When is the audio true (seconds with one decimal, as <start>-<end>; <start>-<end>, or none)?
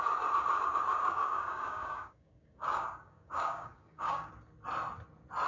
0.0-1.0; 4.3-5.5